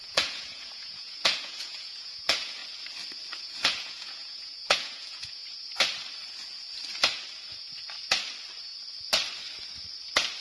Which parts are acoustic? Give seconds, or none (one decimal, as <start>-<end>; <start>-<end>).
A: 2.6-3.4; 5.4-10.4